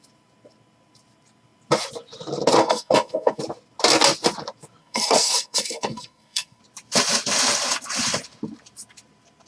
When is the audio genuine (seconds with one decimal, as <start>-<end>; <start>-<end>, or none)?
0.0-2.6; 3.4-4.8; 6.6-9.5